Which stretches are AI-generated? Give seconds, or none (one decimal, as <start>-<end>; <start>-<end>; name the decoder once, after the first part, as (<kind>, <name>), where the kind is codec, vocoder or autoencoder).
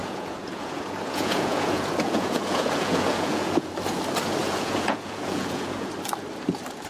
0.0-3.7 (vocoder, Vocos); 4.4-5.9